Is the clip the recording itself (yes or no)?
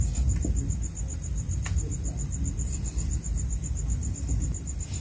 yes